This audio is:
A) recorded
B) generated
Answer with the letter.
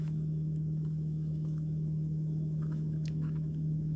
B